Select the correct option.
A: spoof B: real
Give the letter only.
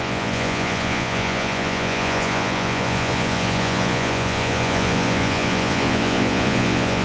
A